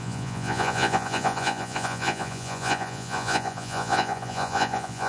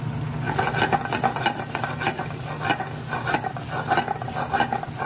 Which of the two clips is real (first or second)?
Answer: second